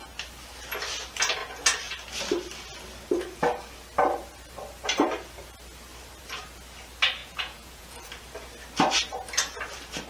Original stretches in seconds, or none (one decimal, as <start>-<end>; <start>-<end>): 0.0-7.2; 8.1-10.1